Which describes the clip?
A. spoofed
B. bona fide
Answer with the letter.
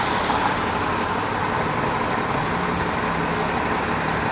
B